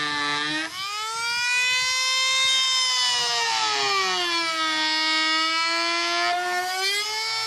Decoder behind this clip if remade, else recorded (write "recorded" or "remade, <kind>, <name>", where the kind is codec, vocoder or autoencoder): recorded